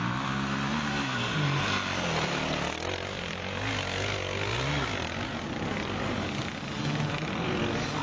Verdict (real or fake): real